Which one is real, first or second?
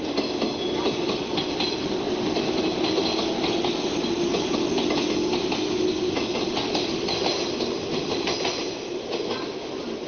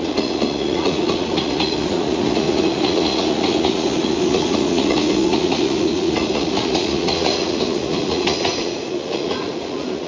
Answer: first